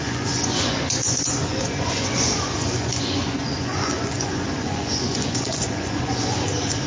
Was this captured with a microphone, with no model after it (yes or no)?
no